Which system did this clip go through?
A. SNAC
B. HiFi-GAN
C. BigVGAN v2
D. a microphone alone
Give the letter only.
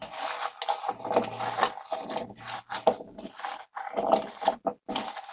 D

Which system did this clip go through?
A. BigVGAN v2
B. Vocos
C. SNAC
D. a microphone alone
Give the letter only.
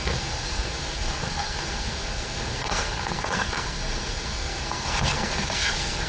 C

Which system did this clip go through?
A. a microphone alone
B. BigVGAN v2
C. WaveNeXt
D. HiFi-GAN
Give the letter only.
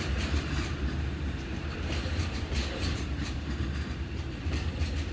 B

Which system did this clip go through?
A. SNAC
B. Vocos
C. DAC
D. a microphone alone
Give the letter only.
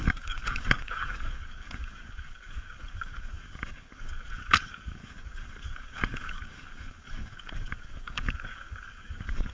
C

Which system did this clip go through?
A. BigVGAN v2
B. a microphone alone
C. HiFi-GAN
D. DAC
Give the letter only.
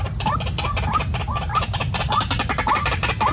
B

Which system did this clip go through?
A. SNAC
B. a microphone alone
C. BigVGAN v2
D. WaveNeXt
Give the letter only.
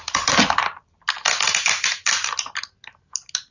B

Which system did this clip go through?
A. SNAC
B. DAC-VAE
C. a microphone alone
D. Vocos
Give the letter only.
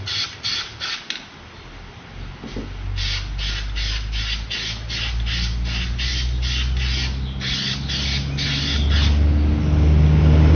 C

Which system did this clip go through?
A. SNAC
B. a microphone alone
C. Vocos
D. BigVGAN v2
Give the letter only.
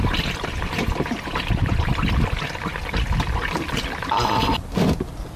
B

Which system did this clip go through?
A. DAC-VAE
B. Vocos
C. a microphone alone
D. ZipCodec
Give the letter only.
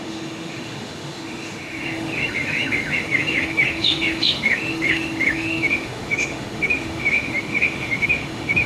A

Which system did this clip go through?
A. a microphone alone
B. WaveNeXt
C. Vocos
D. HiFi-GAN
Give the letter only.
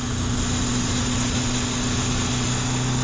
A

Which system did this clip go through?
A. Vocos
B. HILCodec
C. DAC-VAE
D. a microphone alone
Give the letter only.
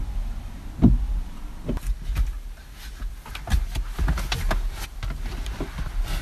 D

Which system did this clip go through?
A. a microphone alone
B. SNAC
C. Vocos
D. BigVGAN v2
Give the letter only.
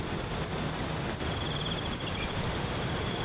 A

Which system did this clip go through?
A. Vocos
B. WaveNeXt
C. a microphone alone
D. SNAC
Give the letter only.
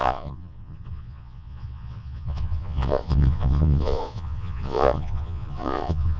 A